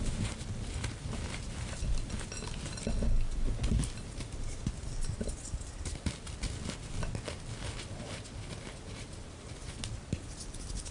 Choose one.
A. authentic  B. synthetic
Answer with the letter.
A